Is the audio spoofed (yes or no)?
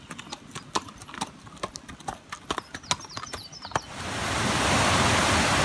no